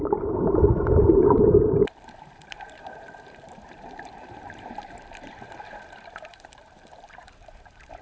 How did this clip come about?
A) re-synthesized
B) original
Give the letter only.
A